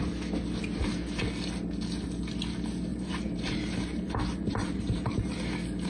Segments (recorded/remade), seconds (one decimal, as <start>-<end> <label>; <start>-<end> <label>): 0.0-2.9 recorded; 2.9-5.3 remade; 5.3-5.9 recorded